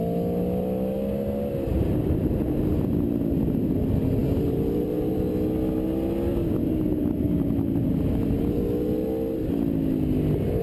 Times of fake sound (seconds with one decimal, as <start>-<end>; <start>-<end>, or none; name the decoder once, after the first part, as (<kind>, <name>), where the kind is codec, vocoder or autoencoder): 1.7-2.3 (vocoder, BigVGAN v2); 4.2-5.1; 6.6-8.4